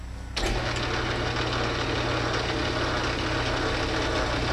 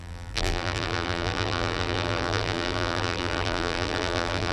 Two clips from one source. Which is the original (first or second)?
first